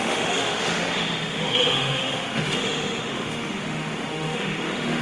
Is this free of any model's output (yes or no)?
no